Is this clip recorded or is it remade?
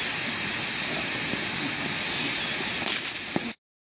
recorded